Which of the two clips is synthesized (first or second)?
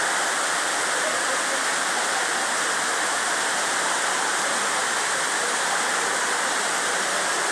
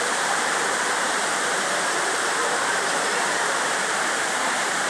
second